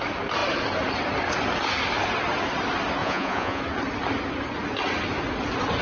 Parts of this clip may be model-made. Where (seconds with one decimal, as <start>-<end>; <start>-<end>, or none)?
3.0-3.6